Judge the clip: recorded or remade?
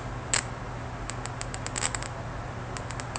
recorded